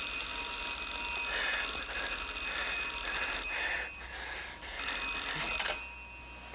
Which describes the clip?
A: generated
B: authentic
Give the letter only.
B